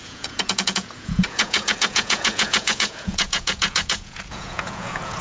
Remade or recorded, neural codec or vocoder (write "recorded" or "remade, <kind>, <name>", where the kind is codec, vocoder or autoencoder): remade, vocoder, Vocos